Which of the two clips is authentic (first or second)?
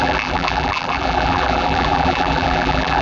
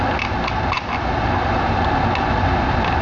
second